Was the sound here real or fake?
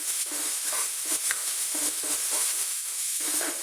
fake